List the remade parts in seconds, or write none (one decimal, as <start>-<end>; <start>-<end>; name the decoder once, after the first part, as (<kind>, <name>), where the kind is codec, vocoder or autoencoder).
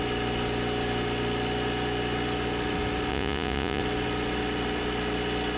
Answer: 3.1-3.8 (vocoder, Vocos)